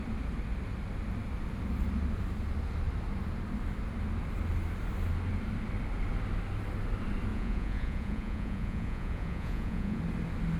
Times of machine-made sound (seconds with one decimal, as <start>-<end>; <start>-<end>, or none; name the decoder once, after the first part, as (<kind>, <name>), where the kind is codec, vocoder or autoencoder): 7.3-10.0 (vocoder, Vocos)